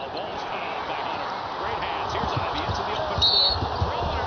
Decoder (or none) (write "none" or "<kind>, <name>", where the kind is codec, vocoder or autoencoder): none